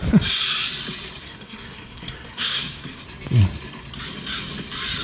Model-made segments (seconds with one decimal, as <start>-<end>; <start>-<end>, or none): 1.2-3.0